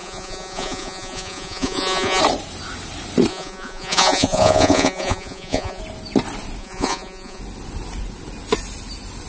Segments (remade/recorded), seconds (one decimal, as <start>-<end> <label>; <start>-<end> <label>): 0.0-2.2 remade; 2.2-3.3 recorded; 3.3-5.8 remade; 5.8-6.6 recorded; 6.6-7.4 remade; 7.4-9.3 recorded